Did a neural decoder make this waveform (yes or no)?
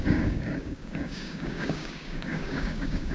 yes